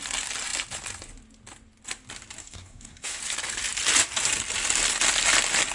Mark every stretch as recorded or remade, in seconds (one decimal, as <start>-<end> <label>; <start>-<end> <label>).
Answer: 0.0-2.4 recorded; 2.4-3.2 remade; 3.2-5.7 recorded